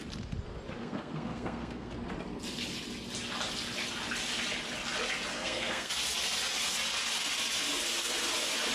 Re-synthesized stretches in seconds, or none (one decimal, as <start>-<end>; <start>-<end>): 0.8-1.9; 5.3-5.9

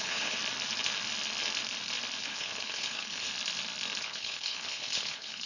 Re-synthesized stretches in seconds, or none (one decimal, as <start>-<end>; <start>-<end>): 0.0-0.4; 2.2-3.3; 4.0-5.5

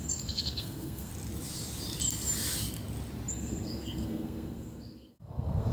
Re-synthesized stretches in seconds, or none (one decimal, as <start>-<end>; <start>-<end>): 0.0-1.1; 3.3-5.7

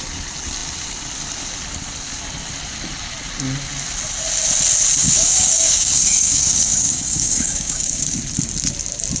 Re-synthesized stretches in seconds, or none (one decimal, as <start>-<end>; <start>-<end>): 5.0-8.2

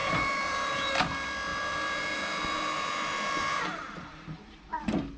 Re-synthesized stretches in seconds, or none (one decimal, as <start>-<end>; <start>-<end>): 0.0-0.9; 1.5-4.6

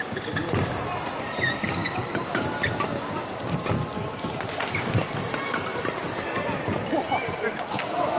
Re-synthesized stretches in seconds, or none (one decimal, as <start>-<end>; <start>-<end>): none